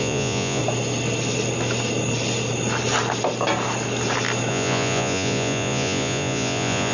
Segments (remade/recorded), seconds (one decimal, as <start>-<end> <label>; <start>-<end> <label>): 0.0-0.6 remade; 0.6-4.5 recorded; 4.5-6.9 remade